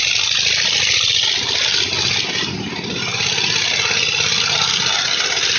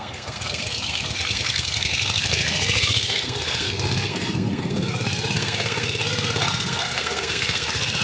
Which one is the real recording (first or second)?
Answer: first